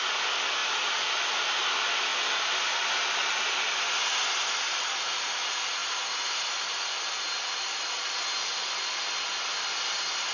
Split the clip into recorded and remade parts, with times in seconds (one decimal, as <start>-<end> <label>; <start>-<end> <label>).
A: 0.0-0.6 recorded; 0.6-1.3 remade; 1.3-10.3 recorded